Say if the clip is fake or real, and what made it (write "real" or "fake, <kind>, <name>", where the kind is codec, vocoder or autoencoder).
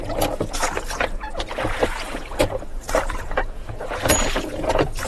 fake, vocoder, Vocos